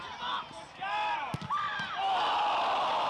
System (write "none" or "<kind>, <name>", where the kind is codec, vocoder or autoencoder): none